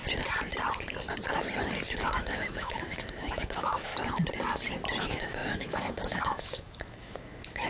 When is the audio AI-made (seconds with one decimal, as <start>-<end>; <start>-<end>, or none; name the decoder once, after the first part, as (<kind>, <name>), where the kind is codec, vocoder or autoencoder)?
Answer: 1.9-3.9 (autoencoder, DAC-VAE); 5.0-7.7